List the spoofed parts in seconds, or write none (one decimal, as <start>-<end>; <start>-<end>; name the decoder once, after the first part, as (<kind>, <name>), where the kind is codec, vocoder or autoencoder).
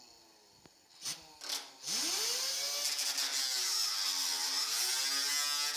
none